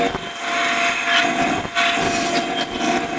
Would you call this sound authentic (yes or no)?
yes